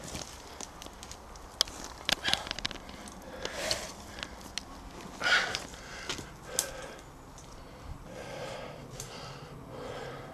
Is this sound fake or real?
real